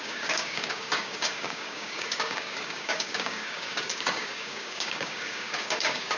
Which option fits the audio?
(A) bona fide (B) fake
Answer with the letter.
B